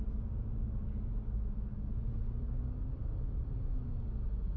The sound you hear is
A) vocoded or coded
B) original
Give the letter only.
B